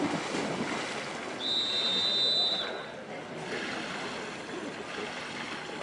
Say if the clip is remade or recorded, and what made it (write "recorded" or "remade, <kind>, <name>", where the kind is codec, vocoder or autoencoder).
recorded